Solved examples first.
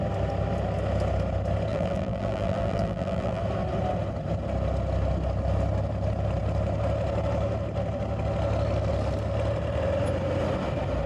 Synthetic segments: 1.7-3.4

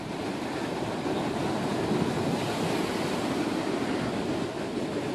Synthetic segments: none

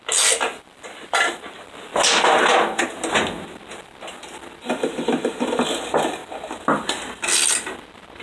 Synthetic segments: 0.0-1.9; 4.7-6.2; 7.2-8.2